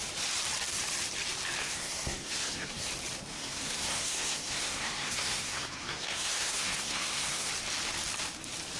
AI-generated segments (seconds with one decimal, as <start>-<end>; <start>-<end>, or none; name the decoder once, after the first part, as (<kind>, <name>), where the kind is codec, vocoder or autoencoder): 1.6-2.9 (codec, SNAC); 3.3-7.5